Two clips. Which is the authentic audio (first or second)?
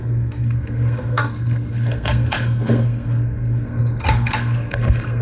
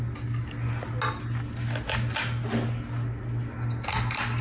second